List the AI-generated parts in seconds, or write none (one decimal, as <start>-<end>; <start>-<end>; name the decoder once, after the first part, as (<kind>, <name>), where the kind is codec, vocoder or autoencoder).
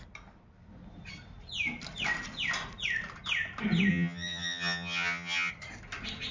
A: 3.9-5.5 (vocoder, HiFi-GAN)